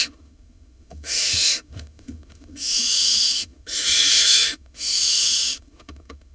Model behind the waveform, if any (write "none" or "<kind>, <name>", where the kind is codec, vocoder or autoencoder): autoencoder, DAC-VAE